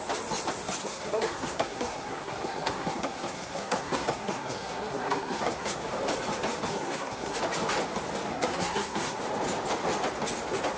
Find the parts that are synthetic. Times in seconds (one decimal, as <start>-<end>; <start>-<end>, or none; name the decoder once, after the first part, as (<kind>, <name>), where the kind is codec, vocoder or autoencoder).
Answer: 0.8-5.8 (codec, SNAC); 6.7-7.4; 8.3-9.2